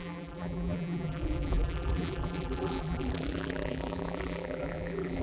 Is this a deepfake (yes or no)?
yes